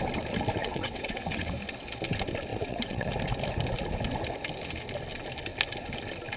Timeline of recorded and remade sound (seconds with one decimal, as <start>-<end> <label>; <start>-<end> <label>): 0.0-0.6 recorded; 0.6-1.5 remade; 1.5-2.5 recorded; 2.5-3.1 remade; 3.1-6.4 recorded